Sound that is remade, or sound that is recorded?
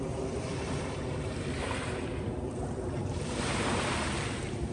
remade